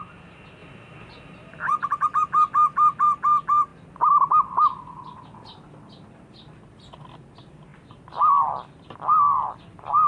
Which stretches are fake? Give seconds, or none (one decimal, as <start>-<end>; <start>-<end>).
none